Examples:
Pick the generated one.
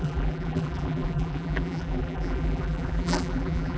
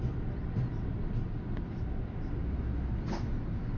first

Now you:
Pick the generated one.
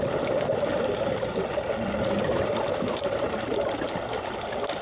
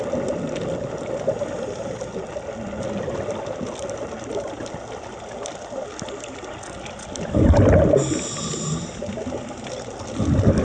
first